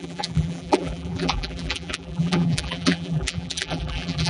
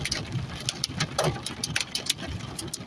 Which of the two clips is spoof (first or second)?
first